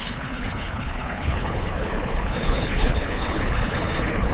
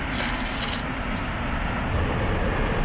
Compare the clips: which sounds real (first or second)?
second